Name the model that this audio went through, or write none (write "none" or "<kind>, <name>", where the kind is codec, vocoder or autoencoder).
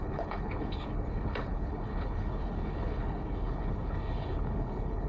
codec, HILCodec